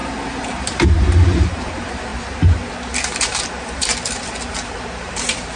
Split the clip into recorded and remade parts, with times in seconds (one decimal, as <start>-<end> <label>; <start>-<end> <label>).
0.0-2.1 remade; 2.1-3.1 recorded; 3.1-3.9 remade; 3.9-5.1 recorded; 5.1-5.6 remade